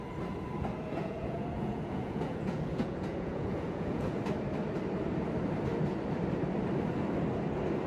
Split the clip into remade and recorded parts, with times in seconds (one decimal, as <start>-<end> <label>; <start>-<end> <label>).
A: 0.0-1.0 recorded; 1.0-4.2 remade; 4.2-7.9 recorded